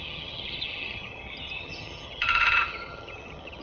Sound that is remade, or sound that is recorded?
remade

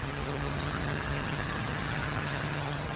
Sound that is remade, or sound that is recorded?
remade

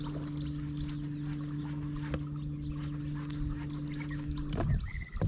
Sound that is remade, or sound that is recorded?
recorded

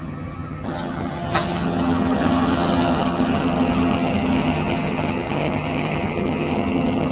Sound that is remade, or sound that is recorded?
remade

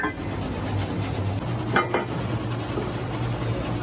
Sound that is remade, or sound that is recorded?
recorded